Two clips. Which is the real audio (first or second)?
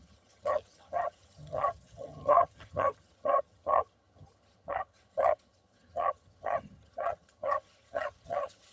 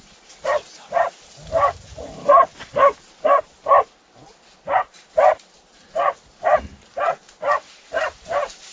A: second